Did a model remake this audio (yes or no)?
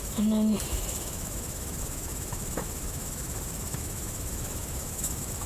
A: yes